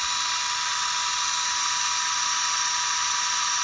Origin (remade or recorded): recorded